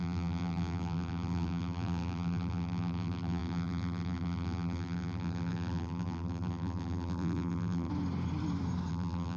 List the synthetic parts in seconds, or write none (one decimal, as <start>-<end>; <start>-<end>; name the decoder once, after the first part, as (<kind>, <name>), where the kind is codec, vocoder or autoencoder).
0.0-7.9 (vocoder, BigVGAN v2); 8.9-9.4